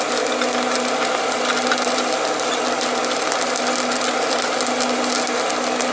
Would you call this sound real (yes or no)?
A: yes